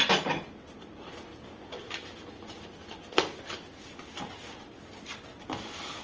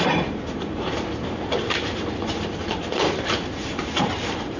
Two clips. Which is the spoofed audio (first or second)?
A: second